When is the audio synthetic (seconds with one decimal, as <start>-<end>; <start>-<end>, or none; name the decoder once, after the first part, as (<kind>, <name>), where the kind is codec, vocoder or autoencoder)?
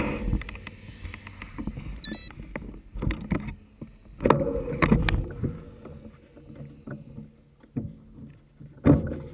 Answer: none